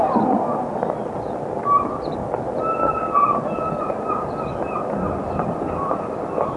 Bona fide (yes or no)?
yes